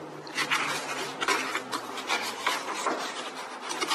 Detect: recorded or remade recorded